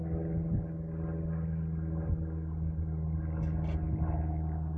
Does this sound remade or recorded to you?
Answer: recorded